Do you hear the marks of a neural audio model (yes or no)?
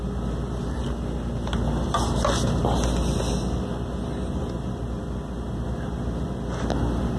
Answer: no